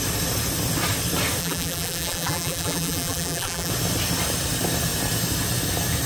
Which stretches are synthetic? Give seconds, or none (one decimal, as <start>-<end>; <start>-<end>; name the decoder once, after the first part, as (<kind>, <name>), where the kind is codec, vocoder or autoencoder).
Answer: 1.4-3.7 (vocoder, BigVGAN v2)